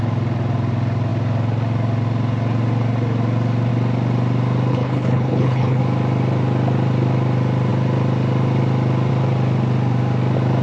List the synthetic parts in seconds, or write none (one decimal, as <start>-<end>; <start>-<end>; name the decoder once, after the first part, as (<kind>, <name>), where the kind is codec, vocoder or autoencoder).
4.7-5.8 (codec, HILCodec)